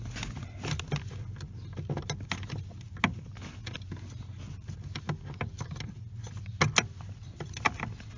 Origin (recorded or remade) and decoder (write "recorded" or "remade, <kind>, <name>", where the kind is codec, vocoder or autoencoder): recorded